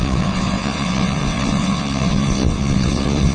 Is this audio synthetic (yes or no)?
yes